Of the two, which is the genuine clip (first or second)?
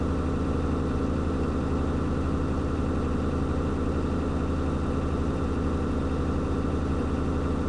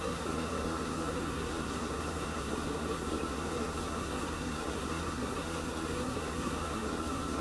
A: first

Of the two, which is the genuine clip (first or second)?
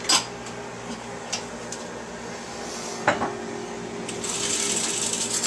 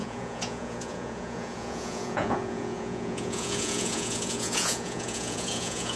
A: first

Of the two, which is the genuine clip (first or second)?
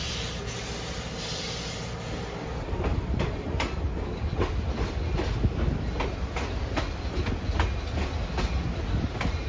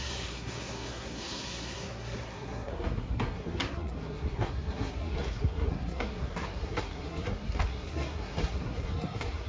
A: first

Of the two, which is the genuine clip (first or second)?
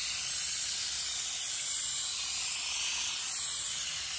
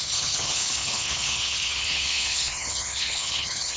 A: first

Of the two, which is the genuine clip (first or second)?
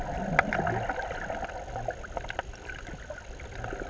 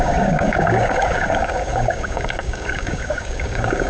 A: first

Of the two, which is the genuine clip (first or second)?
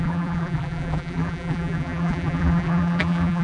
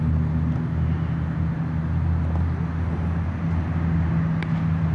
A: second